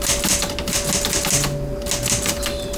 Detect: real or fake real